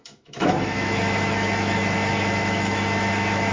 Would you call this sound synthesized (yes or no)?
yes